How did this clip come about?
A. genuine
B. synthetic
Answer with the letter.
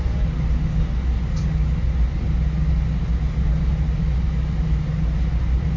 A